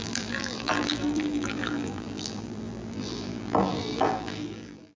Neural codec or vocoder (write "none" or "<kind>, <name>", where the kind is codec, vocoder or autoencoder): vocoder, BigVGAN v2